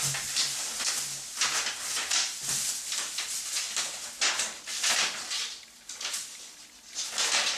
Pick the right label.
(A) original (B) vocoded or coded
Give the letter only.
A